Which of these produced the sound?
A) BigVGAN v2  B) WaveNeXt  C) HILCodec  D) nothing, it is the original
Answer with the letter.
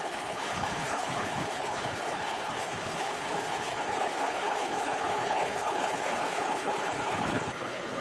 C